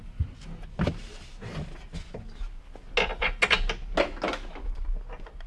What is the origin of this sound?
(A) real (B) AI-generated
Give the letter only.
A